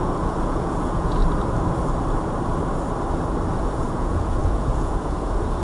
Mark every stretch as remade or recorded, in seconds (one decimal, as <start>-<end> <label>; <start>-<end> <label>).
0.0-1.2 remade; 1.2-3.5 recorded; 3.5-5.6 remade

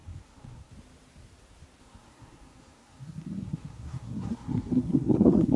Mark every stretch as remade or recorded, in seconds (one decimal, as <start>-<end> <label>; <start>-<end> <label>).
0.0-0.7 remade; 0.7-1.8 recorded; 1.8-5.6 remade